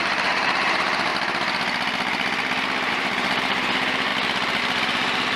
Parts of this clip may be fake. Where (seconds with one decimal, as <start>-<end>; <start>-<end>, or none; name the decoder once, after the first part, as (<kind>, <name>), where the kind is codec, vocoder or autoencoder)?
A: 0.0-1.1 (vocoder, BigVGAN v2); 2.9-4.1; 4.6-5.4